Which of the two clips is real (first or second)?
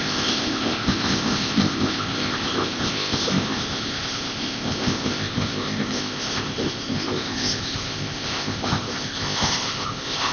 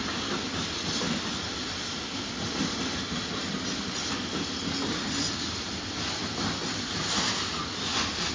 second